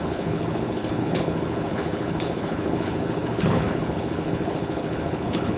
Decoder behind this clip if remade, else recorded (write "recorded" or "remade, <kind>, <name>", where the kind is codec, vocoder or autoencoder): remade, codec, HILCodec